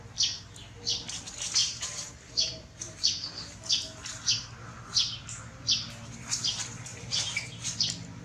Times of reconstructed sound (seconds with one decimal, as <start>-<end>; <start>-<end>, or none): 1.6-3.7; 6.9-7.6